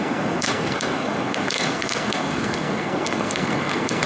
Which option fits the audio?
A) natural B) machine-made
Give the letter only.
B